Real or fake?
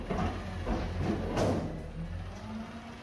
real